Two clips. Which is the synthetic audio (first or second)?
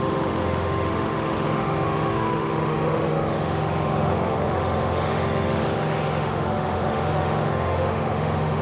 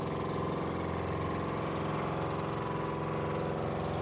first